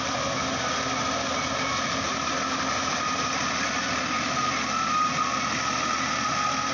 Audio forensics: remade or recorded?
recorded